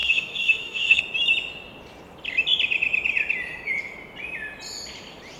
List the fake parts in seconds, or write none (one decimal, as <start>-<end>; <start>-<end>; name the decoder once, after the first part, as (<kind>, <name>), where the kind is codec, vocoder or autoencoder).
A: 0.0-1.0 (codec, DAC)